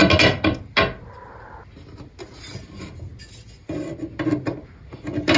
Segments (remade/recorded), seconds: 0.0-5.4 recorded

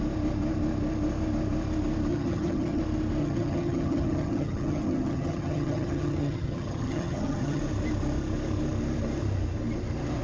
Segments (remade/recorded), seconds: 0.0-2.1 recorded; 2.1-2.8 remade; 2.8-3.2 recorded; 3.2-7.6 remade; 7.6-10.2 recorded

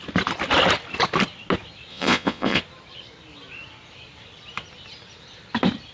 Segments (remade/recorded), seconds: 0.0-1.9 recorded; 1.9-2.6 remade; 2.6-5.9 recorded

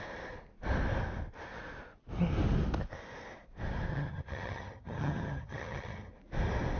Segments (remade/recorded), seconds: 0.0-3.9 recorded; 3.9-6.1 remade; 6.1-6.8 recorded

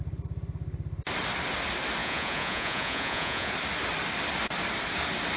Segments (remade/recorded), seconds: 0.0-2.0 recorded; 2.0-3.5 remade; 3.5-5.4 recorded